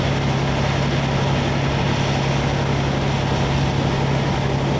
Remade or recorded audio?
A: recorded